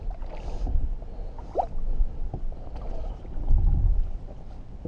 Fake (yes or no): no